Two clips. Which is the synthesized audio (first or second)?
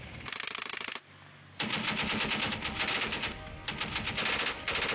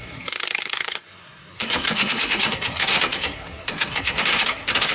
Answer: second